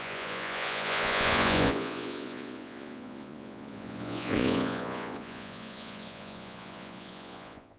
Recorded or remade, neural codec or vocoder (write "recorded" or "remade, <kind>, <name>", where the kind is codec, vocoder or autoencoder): remade, vocoder, Vocos